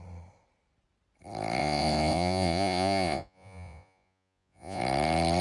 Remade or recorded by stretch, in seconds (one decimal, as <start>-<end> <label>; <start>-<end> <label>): 0.0-1.6 recorded; 1.6-4.8 remade; 4.8-5.4 recorded